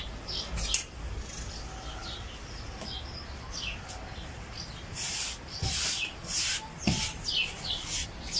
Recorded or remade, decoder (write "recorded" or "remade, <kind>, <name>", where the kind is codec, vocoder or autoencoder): recorded